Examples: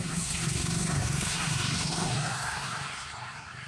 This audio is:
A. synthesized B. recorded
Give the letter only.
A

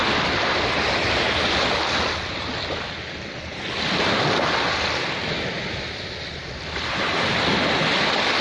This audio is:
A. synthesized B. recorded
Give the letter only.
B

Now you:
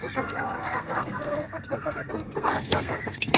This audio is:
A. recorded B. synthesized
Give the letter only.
B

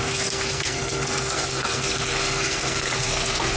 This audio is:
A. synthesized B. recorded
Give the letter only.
A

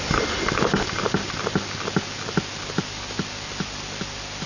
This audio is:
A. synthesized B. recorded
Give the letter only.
B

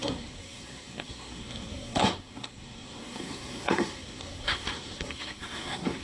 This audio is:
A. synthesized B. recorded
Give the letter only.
A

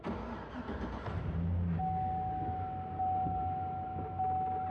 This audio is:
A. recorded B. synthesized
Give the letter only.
A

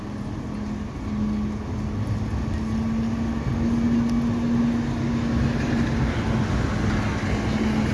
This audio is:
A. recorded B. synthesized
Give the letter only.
A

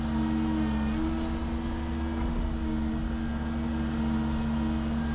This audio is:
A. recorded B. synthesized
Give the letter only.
A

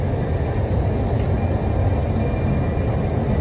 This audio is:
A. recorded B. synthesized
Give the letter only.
A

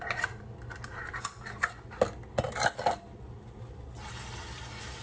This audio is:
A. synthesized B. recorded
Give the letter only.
B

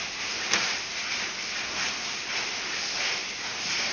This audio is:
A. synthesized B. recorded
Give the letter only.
B